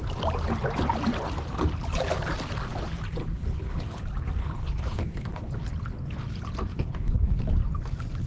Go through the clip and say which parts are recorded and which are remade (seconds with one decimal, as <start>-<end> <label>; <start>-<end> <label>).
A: 0.0-3.2 recorded; 3.2-4.0 remade; 4.0-4.4 recorded; 4.4-5.5 remade; 5.5-6.7 recorded; 6.7-7.4 remade; 7.4-8.3 recorded